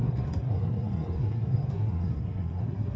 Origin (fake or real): fake